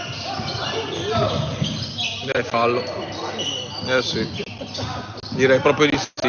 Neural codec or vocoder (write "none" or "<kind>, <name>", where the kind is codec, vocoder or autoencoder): none